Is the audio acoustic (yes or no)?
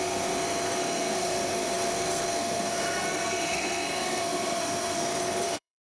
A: no